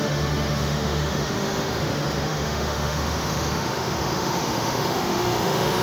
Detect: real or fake fake